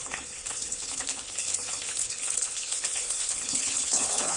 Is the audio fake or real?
fake